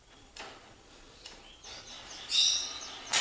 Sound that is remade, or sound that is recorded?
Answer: remade